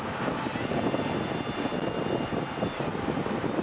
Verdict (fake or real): real